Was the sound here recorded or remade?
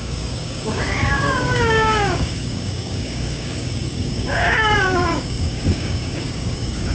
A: remade